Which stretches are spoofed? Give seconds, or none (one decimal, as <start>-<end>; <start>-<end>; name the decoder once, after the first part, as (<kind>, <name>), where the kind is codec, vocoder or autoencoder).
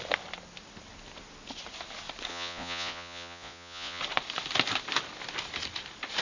2.3-4.0 (vocoder, Vocos)